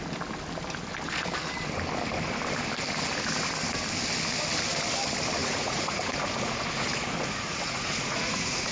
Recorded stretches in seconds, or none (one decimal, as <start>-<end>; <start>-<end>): 0.0-5.4